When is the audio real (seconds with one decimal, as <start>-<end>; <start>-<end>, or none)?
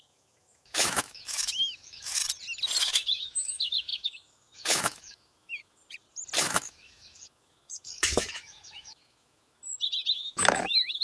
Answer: 2.2-2.8; 5.8-6.4; 9.6-10.1